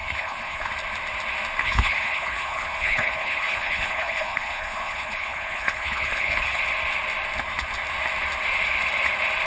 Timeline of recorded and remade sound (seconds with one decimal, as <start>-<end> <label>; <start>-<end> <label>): 0.0-0.7 remade; 0.7-1.6 recorded; 1.6-6.6 remade; 6.6-9.5 recorded